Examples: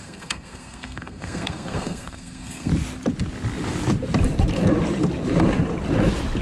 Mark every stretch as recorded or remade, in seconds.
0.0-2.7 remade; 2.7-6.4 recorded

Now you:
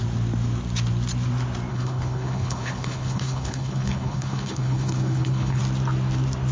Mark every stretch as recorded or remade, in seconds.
0.0-1.7 recorded; 1.7-5.6 remade; 5.6-6.5 recorded

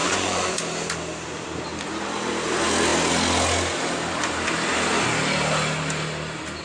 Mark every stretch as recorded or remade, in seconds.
0.0-0.6 remade; 0.6-6.6 recorded

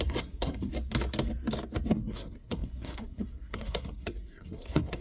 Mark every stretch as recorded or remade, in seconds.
0.0-0.7 remade; 0.7-1.9 recorded; 1.9-5.0 remade